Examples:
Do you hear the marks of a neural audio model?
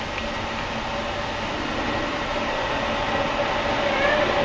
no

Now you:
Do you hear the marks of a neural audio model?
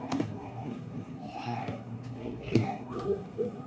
yes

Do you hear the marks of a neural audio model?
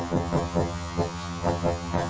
yes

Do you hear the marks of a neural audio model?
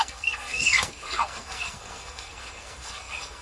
yes